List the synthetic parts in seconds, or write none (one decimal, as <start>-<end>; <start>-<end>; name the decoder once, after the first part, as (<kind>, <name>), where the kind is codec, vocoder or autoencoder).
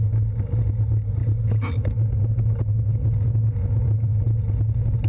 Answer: none